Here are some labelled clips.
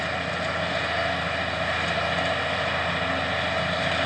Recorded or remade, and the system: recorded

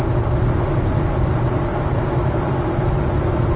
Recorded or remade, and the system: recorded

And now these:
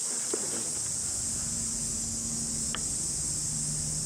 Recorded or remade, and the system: recorded